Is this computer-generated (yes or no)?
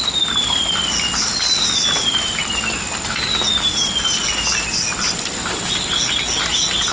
no